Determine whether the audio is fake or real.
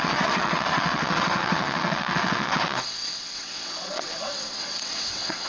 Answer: fake